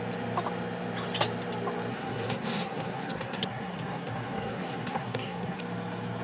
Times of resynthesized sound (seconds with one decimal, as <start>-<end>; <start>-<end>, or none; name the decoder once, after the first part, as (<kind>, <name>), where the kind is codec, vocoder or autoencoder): 1.9-5.6 (codec, SNAC)